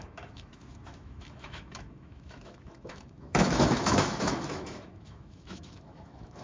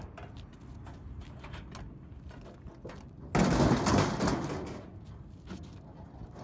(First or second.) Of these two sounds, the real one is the second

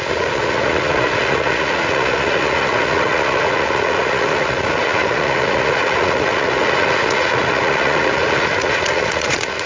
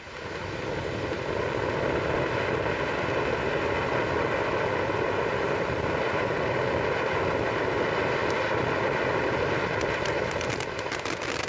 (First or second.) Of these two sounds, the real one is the second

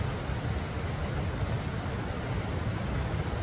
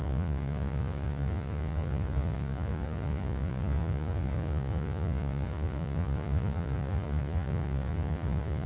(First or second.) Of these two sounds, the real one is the first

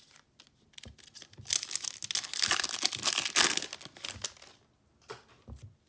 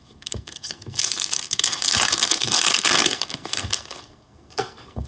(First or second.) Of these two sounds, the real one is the first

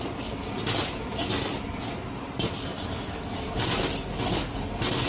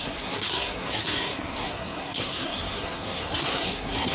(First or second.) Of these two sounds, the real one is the first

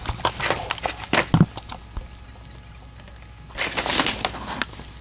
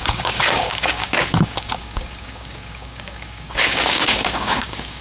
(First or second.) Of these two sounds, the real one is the first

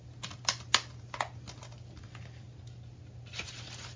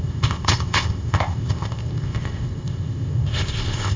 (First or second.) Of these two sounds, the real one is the first